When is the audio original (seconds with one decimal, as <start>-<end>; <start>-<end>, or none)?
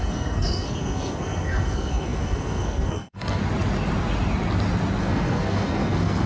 3.4-5.0